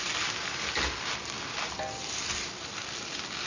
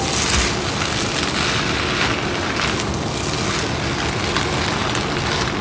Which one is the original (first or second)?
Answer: second